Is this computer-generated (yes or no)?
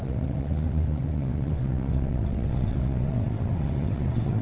yes